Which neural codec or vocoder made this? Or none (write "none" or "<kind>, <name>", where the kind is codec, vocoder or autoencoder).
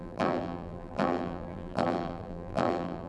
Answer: vocoder, BigVGAN v2